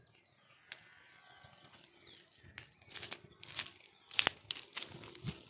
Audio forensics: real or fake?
real